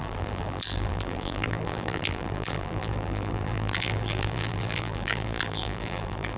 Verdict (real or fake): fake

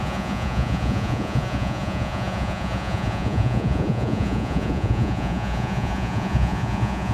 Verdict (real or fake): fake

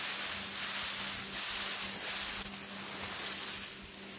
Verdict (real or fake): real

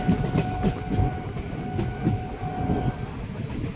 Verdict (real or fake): real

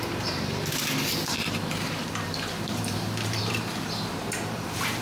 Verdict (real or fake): fake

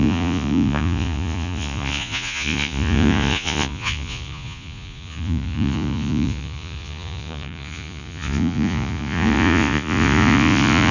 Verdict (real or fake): fake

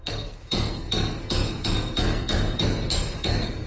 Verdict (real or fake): fake